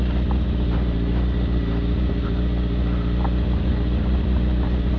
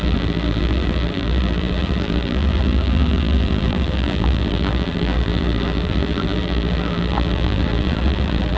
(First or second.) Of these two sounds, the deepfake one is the second